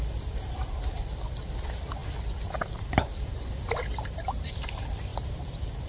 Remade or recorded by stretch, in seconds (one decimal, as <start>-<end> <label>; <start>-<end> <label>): 0.0-5.9 remade